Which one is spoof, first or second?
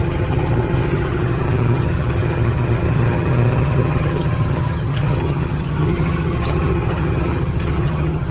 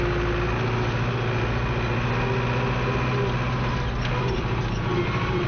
first